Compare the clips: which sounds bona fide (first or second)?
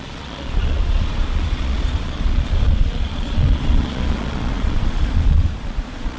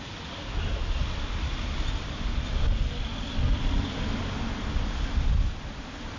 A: second